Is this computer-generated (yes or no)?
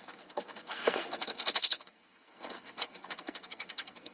yes